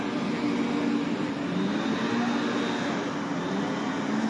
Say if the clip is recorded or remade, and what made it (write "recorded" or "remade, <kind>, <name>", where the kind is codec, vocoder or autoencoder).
recorded